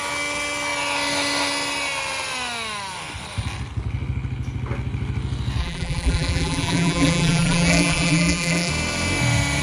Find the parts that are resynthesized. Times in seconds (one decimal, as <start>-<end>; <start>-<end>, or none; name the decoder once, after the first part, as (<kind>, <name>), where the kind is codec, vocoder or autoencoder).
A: 5.6-8.7 (vocoder, BigVGAN v2)